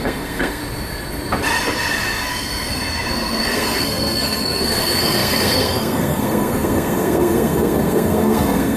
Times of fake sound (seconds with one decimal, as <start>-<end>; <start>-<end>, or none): 0.0-0.6; 2.3-8.8